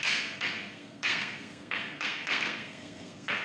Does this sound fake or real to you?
fake